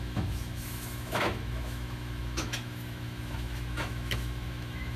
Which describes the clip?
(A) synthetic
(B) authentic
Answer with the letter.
A